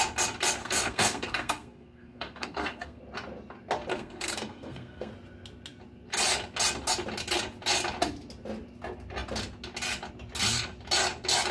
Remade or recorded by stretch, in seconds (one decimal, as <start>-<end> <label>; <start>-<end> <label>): 0.0-0.6 recorded; 0.6-3.0 remade; 3.0-3.9 recorded; 3.9-5.1 remade; 5.1-11.5 recorded